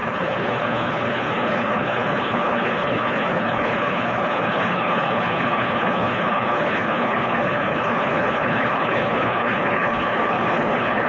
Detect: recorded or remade remade